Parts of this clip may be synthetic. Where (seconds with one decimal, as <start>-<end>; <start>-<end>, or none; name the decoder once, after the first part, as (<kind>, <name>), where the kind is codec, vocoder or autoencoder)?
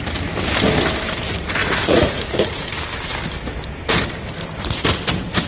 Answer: 1.6-2.7 (vocoder, Vocos)